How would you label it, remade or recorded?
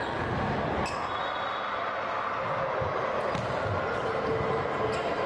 recorded